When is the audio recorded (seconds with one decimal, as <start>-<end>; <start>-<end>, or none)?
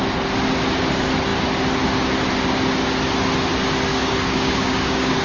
0.0-3.9